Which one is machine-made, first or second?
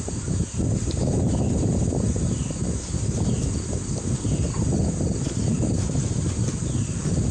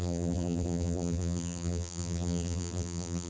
second